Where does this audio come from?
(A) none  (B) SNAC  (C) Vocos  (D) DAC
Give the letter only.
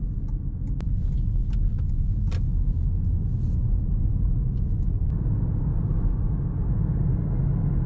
A